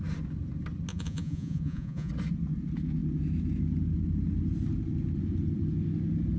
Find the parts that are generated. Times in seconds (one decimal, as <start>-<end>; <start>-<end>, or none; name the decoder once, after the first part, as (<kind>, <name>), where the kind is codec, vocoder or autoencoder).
0.9-2.1 (vocoder, Vocos)